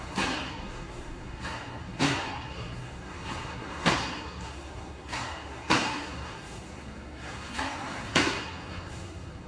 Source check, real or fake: fake